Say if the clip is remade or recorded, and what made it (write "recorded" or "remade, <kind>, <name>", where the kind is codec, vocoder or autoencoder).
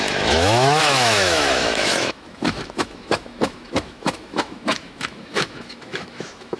remade, autoencoder, DAC-VAE